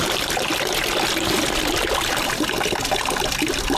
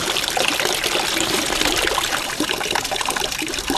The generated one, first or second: second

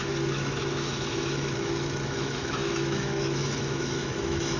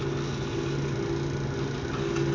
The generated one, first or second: first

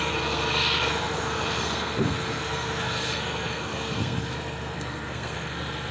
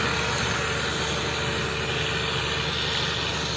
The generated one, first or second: first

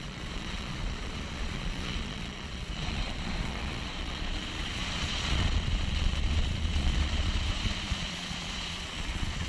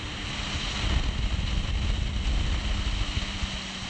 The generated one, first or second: first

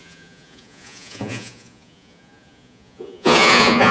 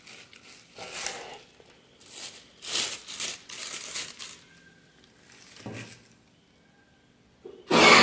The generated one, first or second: first